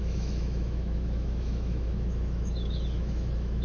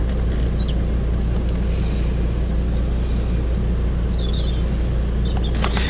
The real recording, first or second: second